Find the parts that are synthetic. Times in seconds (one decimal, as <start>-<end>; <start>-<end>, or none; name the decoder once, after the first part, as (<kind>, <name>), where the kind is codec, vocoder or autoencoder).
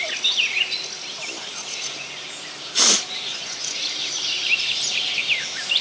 3.3-3.8 (vocoder, Vocos)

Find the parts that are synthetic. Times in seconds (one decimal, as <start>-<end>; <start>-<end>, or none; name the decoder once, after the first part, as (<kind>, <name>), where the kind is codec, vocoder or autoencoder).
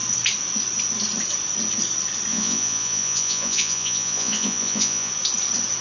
2.3-5.1 (vocoder, Vocos)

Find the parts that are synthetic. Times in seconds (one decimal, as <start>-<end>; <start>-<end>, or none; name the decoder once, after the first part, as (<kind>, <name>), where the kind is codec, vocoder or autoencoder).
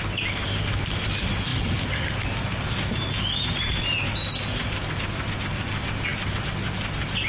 none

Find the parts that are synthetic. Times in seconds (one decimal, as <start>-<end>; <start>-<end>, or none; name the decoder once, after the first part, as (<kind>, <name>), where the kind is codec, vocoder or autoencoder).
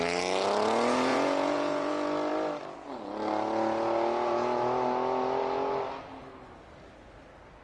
1.1-1.9 (vocoder, Vocos)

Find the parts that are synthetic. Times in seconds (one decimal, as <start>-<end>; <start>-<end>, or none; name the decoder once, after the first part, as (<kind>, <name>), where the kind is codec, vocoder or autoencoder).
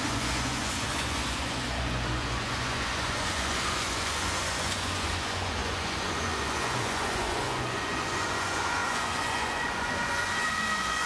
0.0-11.1 (vocoder, Vocos)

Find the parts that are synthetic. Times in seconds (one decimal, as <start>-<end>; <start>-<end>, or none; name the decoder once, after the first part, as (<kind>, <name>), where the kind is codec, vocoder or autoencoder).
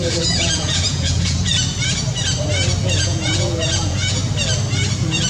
0.0-1.5 (vocoder, Vocos); 2.8-4.2